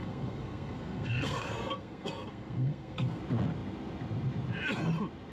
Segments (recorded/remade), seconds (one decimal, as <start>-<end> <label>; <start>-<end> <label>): 0.0-3.2 remade; 3.2-5.3 recorded